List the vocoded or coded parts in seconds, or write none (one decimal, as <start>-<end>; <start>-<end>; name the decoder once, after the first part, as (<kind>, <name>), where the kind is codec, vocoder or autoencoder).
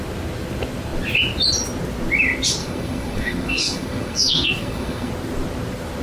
2.6-5.1 (codec, SNAC)